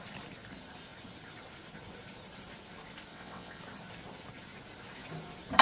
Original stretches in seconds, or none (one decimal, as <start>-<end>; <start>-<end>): 0.0-3.1; 3.6-5.6